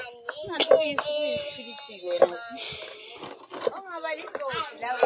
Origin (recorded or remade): recorded